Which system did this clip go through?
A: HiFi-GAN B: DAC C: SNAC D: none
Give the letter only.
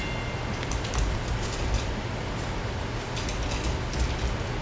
D